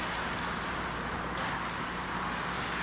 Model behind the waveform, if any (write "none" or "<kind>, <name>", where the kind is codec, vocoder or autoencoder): none